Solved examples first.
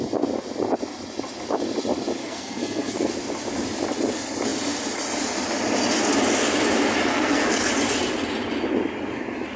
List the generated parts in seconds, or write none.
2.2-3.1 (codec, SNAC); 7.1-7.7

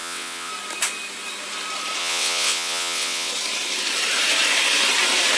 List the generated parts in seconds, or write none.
0.0-0.5 (vocoder, WaveNeXt); 2.0-3.3

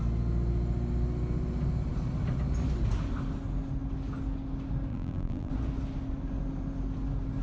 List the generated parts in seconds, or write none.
4.9-5.5 (vocoder, BigVGAN v2)

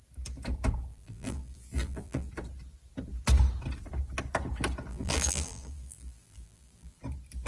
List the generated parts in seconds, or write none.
0.9-2.3 (vocoder, BigVGAN v2); 4.9-7.0